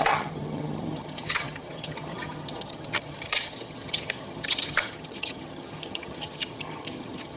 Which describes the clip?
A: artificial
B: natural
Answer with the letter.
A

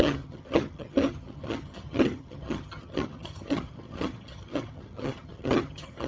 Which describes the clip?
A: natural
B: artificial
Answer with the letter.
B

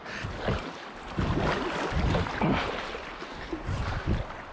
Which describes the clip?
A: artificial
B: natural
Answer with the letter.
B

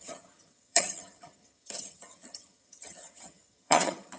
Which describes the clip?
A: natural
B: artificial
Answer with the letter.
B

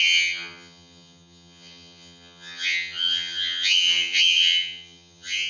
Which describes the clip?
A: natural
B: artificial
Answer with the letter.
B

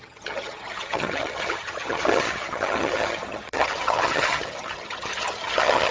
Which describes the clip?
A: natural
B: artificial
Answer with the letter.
B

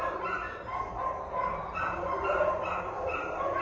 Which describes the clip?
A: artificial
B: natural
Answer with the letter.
B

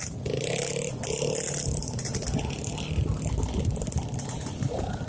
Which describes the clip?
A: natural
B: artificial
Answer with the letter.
A